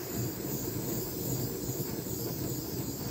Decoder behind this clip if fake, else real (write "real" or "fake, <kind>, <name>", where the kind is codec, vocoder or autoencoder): real